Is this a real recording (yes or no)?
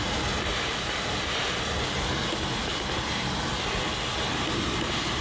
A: yes